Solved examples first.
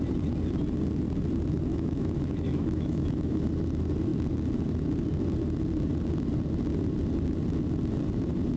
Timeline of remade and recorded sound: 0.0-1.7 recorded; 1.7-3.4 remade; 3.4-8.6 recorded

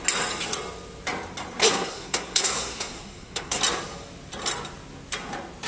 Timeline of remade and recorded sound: 0.0-1.6 recorded; 1.6-3.6 remade; 3.6-5.7 recorded

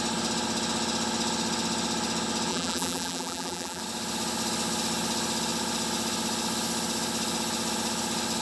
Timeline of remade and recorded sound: 0.0-2.5 recorded; 2.5-3.8 remade; 3.8-8.4 recorded

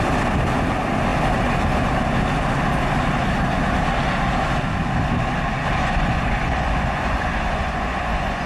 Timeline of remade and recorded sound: 0.0-5.8 recorded; 5.8-8.5 remade

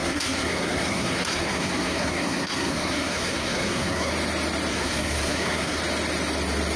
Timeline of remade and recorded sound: 0.0-4.1 remade; 4.1-4.7 recorded; 4.7-5.8 remade; 5.8-6.8 recorded

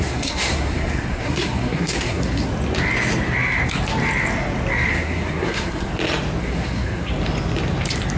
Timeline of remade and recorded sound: 0.0-2.5 remade; 2.5-4.9 recorded; 4.9-5.9 remade; 5.9-6.4 recorded; 6.4-7.1 remade; 7.1-8.2 recorded